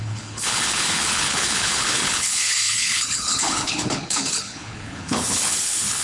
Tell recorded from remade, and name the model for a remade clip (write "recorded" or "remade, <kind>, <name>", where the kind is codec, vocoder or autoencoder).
remade, codec, HILCodec